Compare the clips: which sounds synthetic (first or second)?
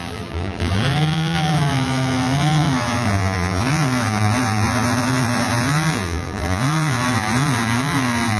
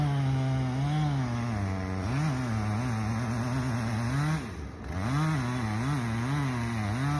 first